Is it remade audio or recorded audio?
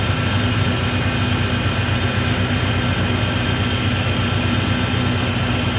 recorded